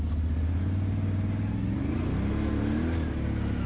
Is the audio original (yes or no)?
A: yes